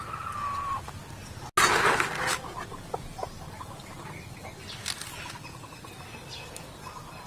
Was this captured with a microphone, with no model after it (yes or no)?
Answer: yes